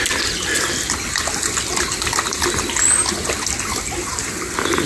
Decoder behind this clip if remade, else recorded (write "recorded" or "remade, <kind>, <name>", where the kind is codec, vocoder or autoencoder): recorded